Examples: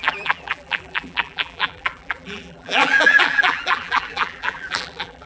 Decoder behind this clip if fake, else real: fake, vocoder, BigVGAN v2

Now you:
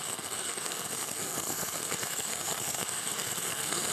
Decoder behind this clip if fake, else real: fake, codec, SNAC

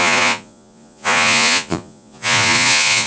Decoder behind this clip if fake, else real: fake, vocoder, Vocos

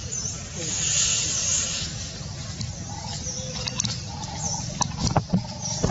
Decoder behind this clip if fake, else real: real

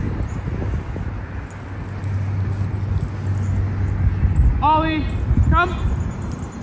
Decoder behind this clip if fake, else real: real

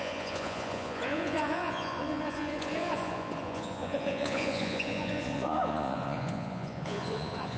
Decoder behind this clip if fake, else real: fake, vocoder, Vocos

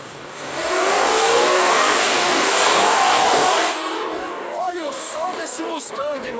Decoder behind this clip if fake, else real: fake, codec, DAC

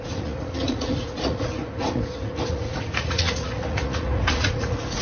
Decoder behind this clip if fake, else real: fake, vocoder, Vocos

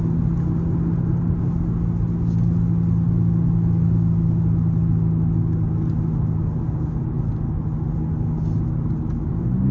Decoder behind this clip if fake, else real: real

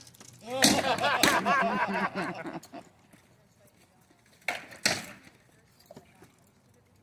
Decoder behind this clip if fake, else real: real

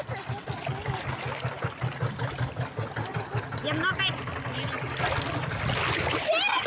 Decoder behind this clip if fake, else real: real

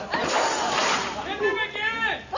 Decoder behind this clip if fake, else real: real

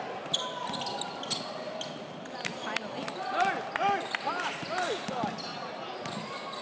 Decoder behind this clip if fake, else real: real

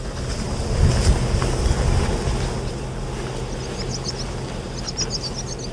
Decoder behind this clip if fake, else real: real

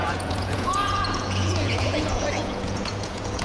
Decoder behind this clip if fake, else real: fake, vocoder, Vocos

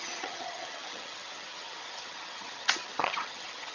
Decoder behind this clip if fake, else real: fake, vocoder, HiFi-GAN